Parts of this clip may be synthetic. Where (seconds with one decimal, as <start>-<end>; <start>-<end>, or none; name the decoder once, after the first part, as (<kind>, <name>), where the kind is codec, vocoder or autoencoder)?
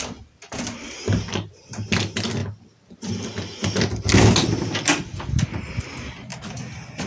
none